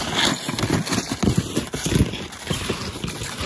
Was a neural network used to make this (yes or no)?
no